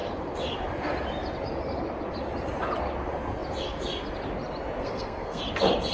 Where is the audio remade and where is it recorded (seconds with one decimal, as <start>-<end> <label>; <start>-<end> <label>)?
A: 0.0-4.8 recorded; 4.8-5.4 remade; 5.4-5.9 recorded